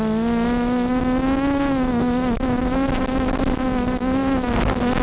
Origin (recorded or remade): recorded